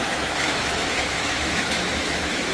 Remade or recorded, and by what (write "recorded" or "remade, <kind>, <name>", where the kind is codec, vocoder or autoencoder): remade, autoencoder, DAC-VAE